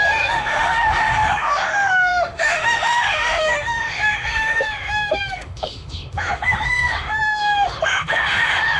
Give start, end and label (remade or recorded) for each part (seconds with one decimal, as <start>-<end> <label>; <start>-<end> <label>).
0.0-8.8 remade